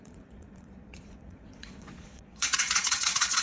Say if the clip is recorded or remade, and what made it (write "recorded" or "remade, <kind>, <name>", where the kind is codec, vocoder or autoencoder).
remade, vocoder, Vocos